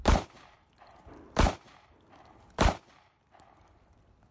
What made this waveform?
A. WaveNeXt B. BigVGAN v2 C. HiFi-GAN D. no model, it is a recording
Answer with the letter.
D